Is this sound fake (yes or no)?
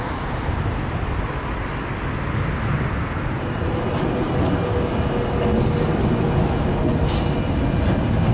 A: no